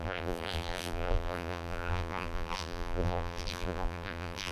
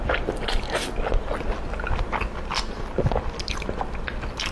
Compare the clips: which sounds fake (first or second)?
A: first